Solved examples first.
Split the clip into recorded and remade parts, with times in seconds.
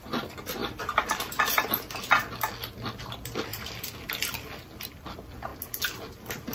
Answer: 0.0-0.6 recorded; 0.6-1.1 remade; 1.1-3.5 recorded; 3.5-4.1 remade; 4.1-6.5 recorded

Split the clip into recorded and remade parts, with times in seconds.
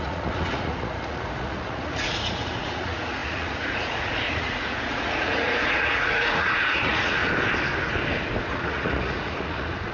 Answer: 0.0-7.2 remade; 7.2-8.5 recorded; 8.5-9.9 remade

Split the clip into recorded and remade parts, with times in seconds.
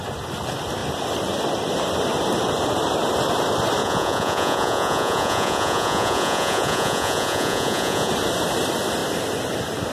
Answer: 0.0-3.8 recorded; 3.8-8.1 remade; 8.1-9.9 recorded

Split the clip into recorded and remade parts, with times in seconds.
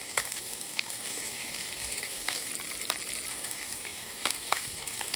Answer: 0.0-2.5 remade; 2.5-3.3 recorded; 3.3-5.2 remade